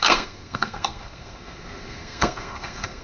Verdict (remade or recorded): remade